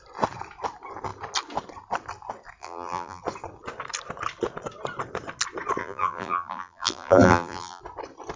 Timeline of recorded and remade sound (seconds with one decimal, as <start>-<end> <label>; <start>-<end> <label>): 0.0-2.6 recorded; 2.6-3.2 remade; 3.2-5.8 recorded; 5.8-7.8 remade; 7.8-8.4 recorded